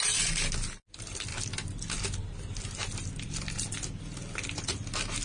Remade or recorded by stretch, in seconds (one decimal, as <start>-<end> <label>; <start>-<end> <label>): 0.0-5.2 recorded